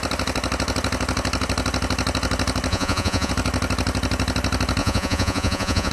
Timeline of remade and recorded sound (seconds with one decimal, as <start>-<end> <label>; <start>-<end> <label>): 0.0-2.7 recorded; 2.7-3.3 remade; 3.3-4.8 recorded; 4.8-5.9 remade